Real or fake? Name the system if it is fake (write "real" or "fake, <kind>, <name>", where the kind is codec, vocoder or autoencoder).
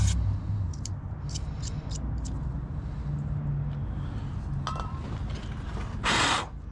real